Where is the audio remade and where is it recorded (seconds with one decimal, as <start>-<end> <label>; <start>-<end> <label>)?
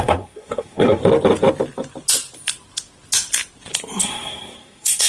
0.0-1.0 remade; 1.0-4.0 recorded; 4.0-5.1 remade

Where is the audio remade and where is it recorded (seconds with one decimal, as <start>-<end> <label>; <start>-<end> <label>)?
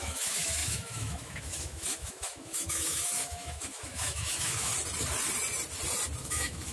0.0-4.7 remade; 4.7-6.2 recorded; 6.2-6.7 remade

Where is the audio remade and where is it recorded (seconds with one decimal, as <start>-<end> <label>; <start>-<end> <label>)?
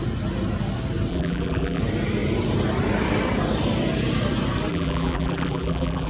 0.0-1.1 recorded; 1.1-1.8 remade; 1.8-4.7 recorded; 4.7-6.1 remade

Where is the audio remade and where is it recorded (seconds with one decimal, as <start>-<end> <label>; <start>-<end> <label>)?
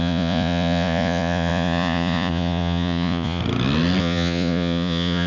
0.0-3.4 remade; 3.4-4.0 recorded; 4.0-5.3 remade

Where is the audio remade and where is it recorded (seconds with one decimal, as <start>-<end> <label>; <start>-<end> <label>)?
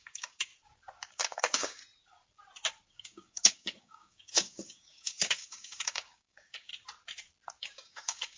0.0-0.5 remade; 0.5-1.1 recorded; 1.1-1.8 remade; 1.8-2.9 recorded; 2.9-6.7 remade; 6.7-7.6 recorded; 7.6-8.4 remade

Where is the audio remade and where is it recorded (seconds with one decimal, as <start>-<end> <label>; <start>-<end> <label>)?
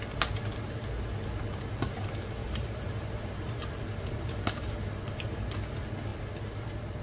0.0-2.4 recorded; 2.4-4.6 remade; 4.6-7.0 recorded